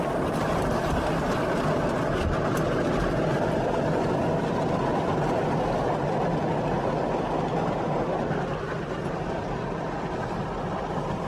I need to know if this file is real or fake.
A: real